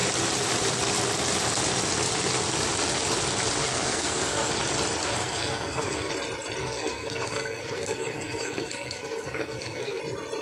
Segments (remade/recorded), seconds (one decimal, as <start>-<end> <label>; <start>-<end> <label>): 0.0-3.6 recorded; 3.6-4.5 remade; 4.5-5.0 recorded; 5.0-6.1 remade; 6.1-6.6 recorded; 6.6-10.0 remade; 10.0-10.4 recorded